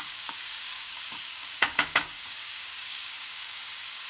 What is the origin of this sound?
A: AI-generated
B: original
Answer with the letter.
A